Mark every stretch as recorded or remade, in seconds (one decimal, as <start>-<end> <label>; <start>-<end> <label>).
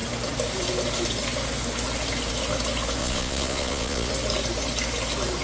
0.0-3.0 recorded; 3.0-4.1 remade; 4.1-5.4 recorded